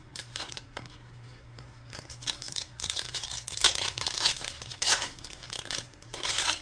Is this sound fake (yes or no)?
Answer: yes